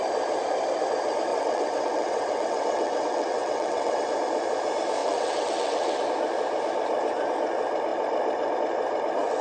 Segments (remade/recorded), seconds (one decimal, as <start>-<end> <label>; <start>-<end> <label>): 0.0-1.3 recorded; 1.3-4.0 remade; 4.0-5.0 recorded; 5.0-6.0 remade; 6.0-9.4 recorded